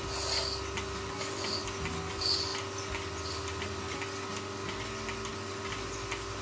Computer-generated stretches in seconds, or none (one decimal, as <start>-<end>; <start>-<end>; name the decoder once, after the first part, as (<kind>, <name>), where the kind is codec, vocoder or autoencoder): none